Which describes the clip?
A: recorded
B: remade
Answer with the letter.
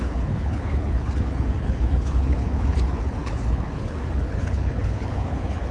B